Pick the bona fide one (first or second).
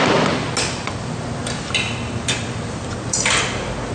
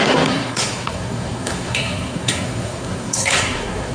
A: first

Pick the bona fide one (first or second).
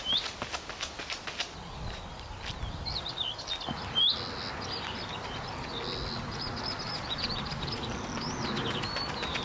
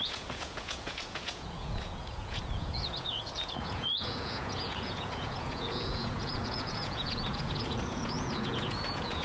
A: first